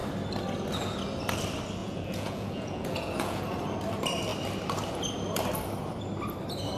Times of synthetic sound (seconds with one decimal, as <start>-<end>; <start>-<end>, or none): 1.8-3.4

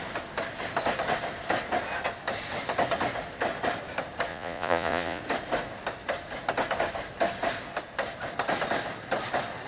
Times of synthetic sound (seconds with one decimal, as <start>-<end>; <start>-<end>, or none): 4.3-5.2

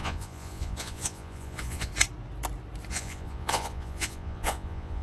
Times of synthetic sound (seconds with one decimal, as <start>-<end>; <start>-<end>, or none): 0.0-1.9; 2.9-5.0

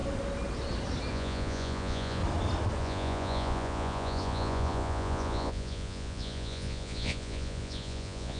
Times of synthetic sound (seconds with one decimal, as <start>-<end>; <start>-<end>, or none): 1.1-2.2; 2.8-8.4